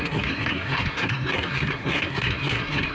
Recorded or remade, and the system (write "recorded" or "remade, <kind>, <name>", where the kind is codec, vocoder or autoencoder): remade, codec, SNAC